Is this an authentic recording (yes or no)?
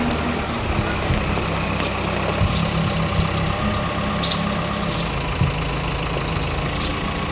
yes